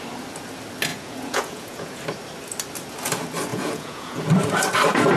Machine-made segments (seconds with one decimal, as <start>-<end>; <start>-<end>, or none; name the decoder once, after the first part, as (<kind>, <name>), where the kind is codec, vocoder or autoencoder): 0.9-2.0 (vocoder, Vocos); 3.5-4.2